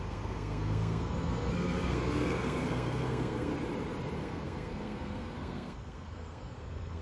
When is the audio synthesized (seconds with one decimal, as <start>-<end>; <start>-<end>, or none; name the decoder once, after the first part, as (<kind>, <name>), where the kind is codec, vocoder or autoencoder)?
0.0-3.5 (codec, SNAC); 4.2-7.0